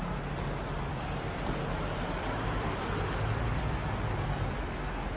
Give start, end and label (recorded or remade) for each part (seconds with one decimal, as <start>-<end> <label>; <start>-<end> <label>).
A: 0.0-0.9 recorded; 0.9-3.7 remade; 3.7-5.2 recorded